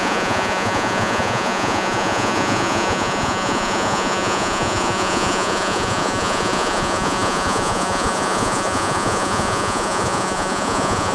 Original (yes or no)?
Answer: no